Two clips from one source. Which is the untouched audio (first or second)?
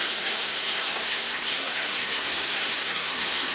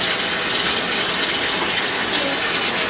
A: second